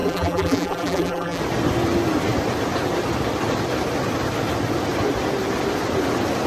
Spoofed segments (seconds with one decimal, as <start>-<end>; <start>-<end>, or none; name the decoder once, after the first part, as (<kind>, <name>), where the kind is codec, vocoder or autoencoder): 0.0-1.4 (vocoder, BigVGAN v2)